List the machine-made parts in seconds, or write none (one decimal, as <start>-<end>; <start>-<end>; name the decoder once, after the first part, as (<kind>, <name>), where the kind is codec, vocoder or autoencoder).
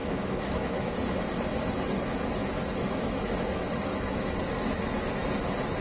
0.0-0.9 (autoencoder, DAC-VAE); 2.4-4.3